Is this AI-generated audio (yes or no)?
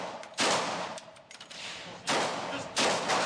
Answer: no